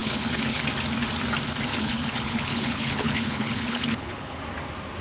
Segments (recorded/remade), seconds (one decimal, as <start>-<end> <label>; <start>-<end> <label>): 0.0-0.6 remade; 0.6-1.7 recorded; 1.7-4.4 remade; 4.4-5.0 recorded